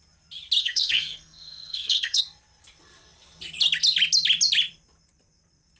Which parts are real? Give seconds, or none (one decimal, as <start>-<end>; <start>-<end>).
0.0-0.6; 2.2-5.8